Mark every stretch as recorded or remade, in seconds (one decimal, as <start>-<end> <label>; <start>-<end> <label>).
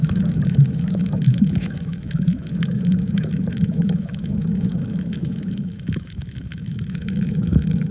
0.0-7.9 remade